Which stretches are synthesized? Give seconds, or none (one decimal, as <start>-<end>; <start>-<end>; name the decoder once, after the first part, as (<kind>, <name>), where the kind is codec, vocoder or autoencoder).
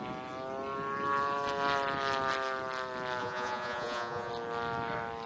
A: 3.2-4.3 (vocoder, Vocos)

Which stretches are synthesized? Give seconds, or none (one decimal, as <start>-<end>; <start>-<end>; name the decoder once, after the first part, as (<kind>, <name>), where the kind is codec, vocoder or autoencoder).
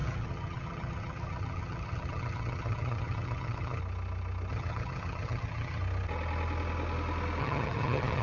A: 0.0-3.8 (vocoder, HiFi-GAN); 4.5-5.8; 7.4-8.2